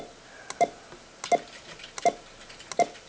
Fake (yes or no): no